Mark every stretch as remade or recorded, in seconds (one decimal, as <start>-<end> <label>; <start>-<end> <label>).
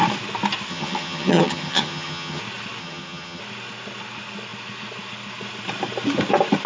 0.0-0.7 recorded; 0.7-2.4 remade; 2.4-2.8 recorded; 2.8-3.4 remade; 3.4-6.7 recorded